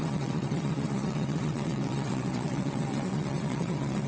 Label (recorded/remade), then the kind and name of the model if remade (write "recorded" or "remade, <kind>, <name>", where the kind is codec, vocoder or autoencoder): remade, vocoder, WaveNeXt